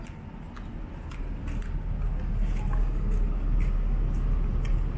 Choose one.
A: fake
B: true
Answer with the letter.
B